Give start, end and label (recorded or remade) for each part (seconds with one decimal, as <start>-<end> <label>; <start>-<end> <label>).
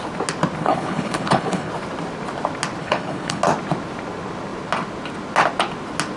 0.0-0.6 recorded; 0.6-1.7 remade; 1.7-2.8 recorded; 2.8-3.4 remade; 3.4-6.2 recorded